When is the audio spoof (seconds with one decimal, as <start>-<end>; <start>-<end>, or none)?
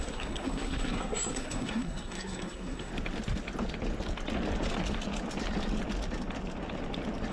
0.0-2.9